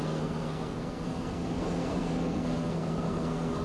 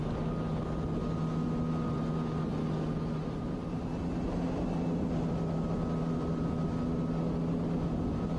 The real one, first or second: second